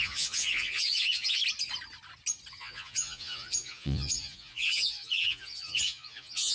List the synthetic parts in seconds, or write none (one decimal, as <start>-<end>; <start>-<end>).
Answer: 0.0-1.4; 2.5-6.5